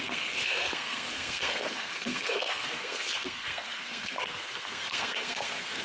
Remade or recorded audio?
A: remade